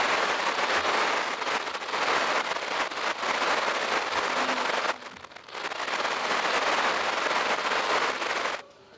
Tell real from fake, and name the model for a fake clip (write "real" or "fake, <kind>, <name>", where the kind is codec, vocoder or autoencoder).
real